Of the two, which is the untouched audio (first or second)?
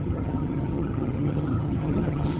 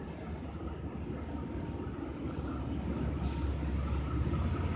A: second